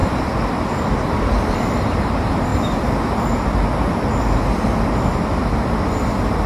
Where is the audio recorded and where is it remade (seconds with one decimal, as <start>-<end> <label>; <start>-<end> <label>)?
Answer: 0.0-2.5 remade; 2.5-6.5 recorded